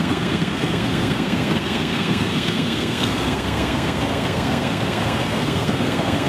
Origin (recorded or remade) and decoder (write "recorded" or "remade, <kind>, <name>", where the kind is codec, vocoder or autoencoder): remade, codec, SNAC